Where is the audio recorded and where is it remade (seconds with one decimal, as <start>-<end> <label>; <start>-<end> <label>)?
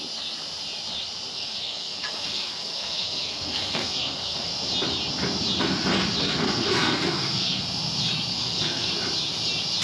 0.0-1.3 recorded; 1.3-4.5 remade; 4.5-6.2 recorded; 6.2-7.6 remade; 7.6-8.3 recorded; 8.3-8.9 remade; 8.9-9.8 recorded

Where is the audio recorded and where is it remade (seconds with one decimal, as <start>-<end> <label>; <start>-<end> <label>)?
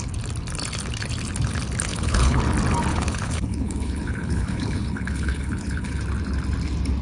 0.0-1.9 recorded; 1.9-2.4 remade; 2.4-2.9 recorded; 2.9-6.0 remade; 6.0-7.0 recorded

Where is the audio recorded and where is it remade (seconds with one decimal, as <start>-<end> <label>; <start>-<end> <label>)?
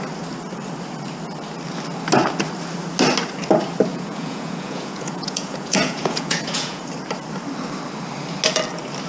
0.0-3.9 recorded; 3.9-6.8 remade; 6.8-9.1 recorded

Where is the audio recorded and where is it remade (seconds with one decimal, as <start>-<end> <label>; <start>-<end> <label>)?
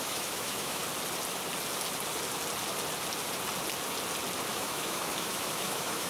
0.0-0.8 remade; 0.8-4.5 recorded; 4.5-6.1 remade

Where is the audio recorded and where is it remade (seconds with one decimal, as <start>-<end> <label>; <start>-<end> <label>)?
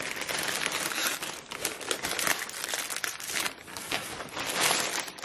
0.0-3.7 recorded; 3.7-4.2 remade; 4.2-5.2 recorded